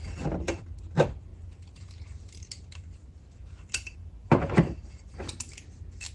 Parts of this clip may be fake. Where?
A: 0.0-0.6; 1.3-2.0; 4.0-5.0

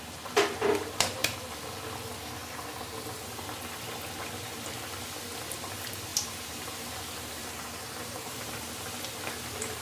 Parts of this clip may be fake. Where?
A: 1.2-1.7; 6.1-7.0; 7.4-8.8

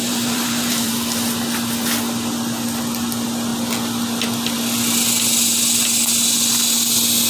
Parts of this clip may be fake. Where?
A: 0.0-0.9

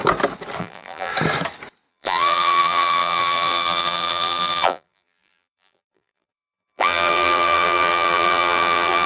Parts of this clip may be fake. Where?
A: 0.6-1.1; 1.9-9.1

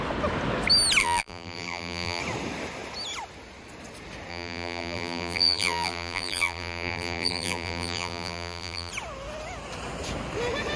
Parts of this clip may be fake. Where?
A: 1.0-2.2; 4.3-8.9

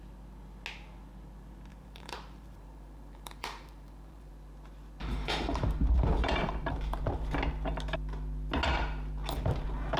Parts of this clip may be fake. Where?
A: 1.7-4.3; 5.0-5.6; 6.1-7.0